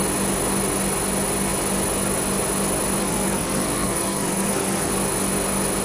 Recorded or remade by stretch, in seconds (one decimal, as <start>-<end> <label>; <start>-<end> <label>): 0.0-3.0 recorded; 3.0-4.9 remade; 4.9-5.8 recorded